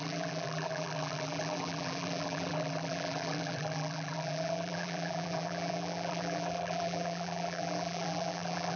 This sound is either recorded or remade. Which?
remade